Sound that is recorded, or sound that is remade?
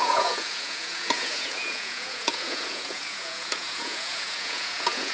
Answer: remade